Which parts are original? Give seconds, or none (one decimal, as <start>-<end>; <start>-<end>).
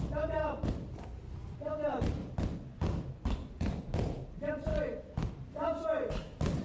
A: 0.4-1.3; 2.2-4.3; 4.7-5.3; 5.7-6.6